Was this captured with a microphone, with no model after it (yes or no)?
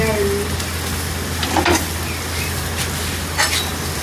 yes